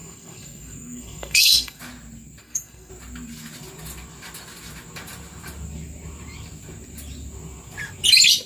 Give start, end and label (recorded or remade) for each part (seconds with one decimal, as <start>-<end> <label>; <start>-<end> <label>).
0.0-1.8 remade; 1.8-2.4 recorded; 2.4-2.9 remade; 2.9-8.5 recorded